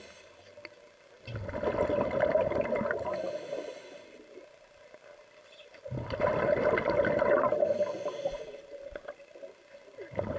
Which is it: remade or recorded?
recorded